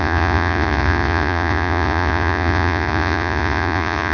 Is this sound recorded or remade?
remade